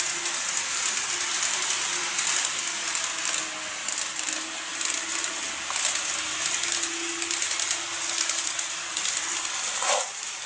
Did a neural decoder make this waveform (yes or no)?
no